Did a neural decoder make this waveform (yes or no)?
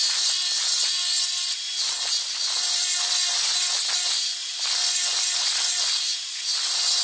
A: no